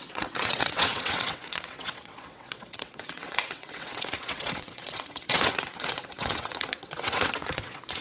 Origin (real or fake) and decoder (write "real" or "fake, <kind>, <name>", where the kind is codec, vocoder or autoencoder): fake, vocoder, WaveNeXt